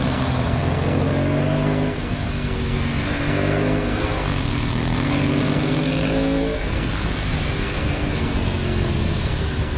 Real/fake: fake